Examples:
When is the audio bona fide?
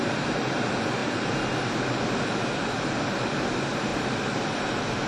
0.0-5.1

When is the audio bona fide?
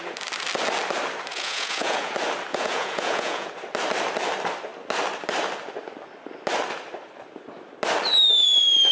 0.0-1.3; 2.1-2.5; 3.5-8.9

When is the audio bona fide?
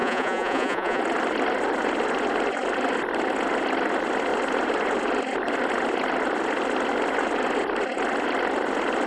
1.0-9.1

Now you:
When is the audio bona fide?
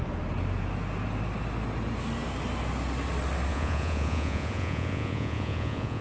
0.0-3.5